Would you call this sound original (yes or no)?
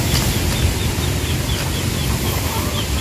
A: yes